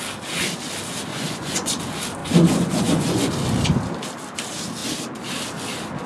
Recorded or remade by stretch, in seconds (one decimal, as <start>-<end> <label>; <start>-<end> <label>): 0.0-1.1 recorded; 1.1-1.8 remade; 1.8-2.2 recorded; 2.2-3.3 remade; 3.3-6.1 recorded